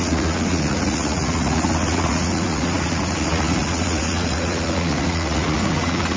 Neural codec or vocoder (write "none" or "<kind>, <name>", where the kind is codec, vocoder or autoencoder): vocoder, Vocos